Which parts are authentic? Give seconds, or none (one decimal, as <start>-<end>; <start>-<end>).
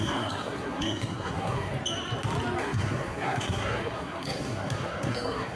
1.7-2.6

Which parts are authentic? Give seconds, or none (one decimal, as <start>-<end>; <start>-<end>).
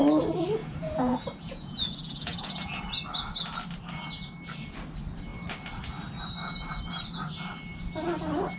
0.0-0.6; 2.8-8.6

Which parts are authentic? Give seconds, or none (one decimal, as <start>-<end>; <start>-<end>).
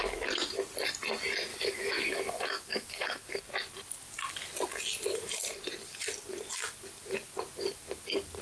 0.0-1.5; 3.4-8.4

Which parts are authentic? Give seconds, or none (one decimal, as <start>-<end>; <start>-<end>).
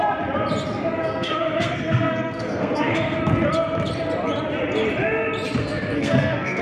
0.0-1.0; 3.2-5.6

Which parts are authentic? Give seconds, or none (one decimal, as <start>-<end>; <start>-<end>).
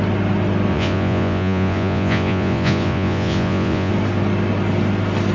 0.0-0.7; 3.9-5.3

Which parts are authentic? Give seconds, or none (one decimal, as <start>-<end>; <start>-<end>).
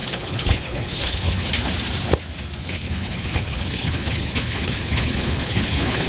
1.5-2.6